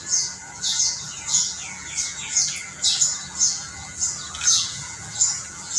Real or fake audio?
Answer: fake